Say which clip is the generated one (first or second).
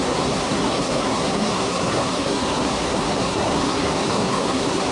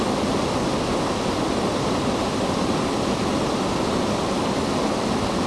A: first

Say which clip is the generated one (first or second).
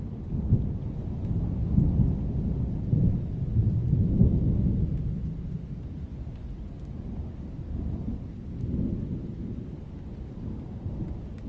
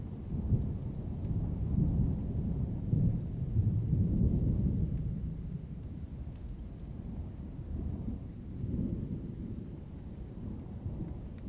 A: second